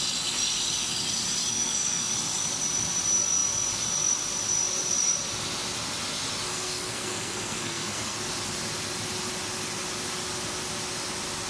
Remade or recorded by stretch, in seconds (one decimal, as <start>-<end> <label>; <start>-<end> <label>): 0.0-1.5 recorded; 1.5-2.1 remade; 2.1-6.5 recorded; 6.5-8.2 remade; 8.2-11.5 recorded